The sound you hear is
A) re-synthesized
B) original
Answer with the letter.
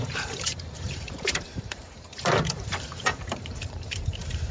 A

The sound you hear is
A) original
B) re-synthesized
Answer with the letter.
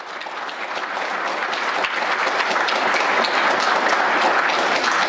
A